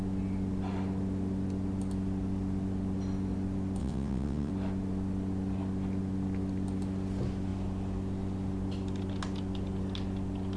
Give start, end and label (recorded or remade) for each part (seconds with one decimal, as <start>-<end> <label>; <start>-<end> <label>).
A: 0.0-3.8 recorded; 3.8-4.5 remade; 4.5-10.6 recorded